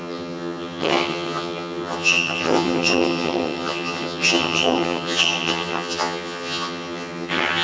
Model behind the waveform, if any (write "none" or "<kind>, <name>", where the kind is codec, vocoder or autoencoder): vocoder, HiFi-GAN